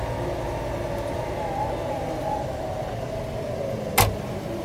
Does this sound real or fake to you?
real